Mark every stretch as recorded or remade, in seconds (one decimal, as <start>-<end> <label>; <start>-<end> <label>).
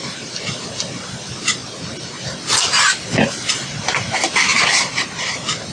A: 0.0-1.6 remade; 1.6-3.5 recorded; 3.5-5.7 remade